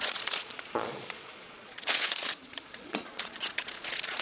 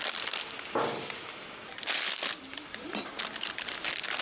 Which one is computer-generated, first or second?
first